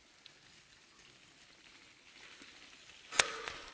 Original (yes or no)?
yes